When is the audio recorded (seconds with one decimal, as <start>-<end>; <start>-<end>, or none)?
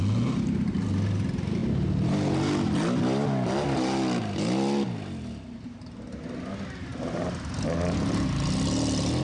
0.0-9.2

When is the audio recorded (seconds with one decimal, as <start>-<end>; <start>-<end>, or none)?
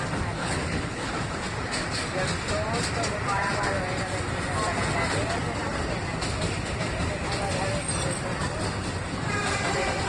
0.0-0.4; 1.1-10.1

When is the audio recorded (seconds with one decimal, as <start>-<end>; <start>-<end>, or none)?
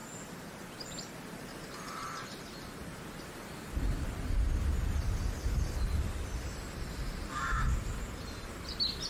3.1-9.1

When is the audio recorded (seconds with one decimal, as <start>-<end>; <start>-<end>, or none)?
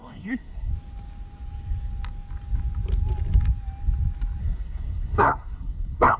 0.7-4.4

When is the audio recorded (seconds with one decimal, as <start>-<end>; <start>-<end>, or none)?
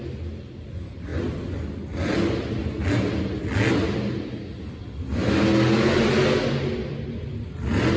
0.0-8.0